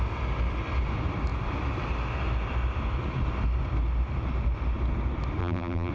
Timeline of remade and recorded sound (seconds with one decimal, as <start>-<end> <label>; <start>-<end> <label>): 0.0-5.4 recorded; 5.4-5.9 remade